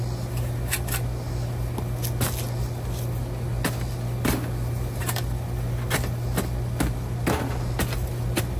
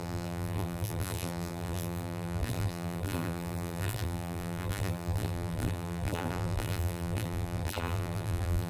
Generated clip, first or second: second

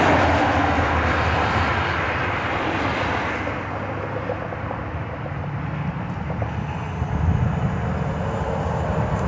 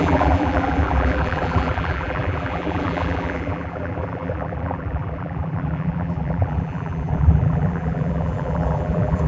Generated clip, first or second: second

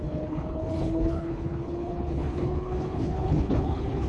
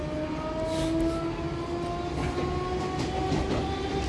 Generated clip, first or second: first